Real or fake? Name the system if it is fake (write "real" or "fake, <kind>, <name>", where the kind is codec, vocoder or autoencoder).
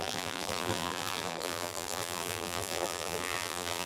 fake, vocoder, BigVGAN v2